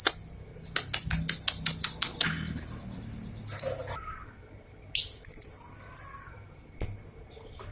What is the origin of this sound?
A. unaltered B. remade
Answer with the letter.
A